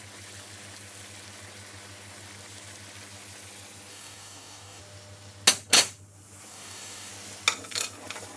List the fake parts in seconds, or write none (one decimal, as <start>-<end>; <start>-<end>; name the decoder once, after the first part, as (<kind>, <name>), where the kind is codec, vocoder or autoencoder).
3.9-4.8 (codec, DAC); 6.5-7.1